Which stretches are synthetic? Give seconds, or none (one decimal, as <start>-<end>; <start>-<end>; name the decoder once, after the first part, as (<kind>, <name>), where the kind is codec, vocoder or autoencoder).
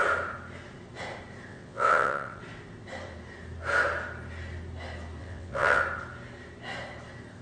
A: 1.5-2.4 (vocoder, WaveNeXt); 5.2-5.8